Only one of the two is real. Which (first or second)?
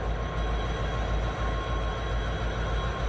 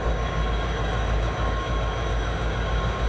first